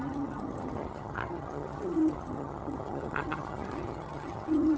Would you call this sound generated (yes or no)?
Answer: yes